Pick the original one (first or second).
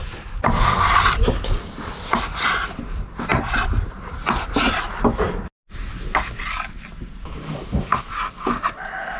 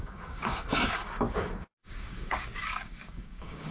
first